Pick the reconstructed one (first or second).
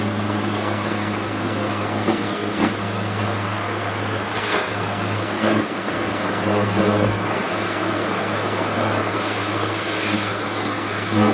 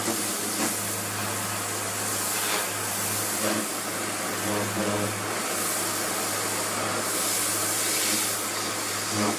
first